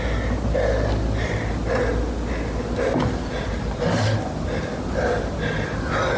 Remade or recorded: recorded